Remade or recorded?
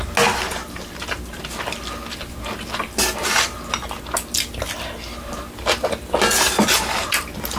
recorded